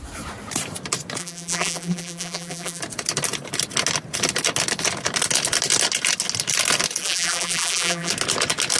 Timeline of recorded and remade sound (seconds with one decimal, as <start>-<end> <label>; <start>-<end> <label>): 0.0-1.2 recorded; 1.2-2.8 remade; 2.8-7.0 recorded; 7.0-8.1 remade; 8.1-8.8 recorded